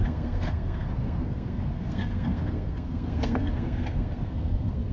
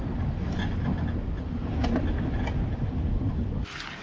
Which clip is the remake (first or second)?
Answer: first